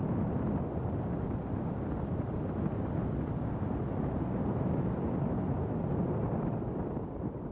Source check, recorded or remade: recorded